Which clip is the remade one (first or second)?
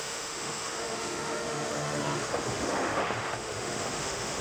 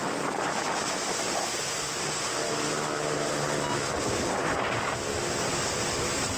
first